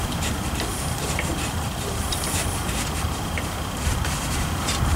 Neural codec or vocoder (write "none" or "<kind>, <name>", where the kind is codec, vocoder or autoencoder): vocoder, BigVGAN v2